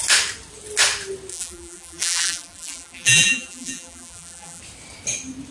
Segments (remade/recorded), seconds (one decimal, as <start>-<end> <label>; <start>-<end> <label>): 0.0-1.3 recorded; 1.3-4.6 remade; 4.6-5.5 recorded